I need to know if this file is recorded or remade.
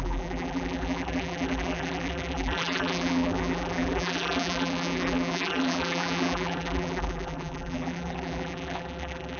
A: remade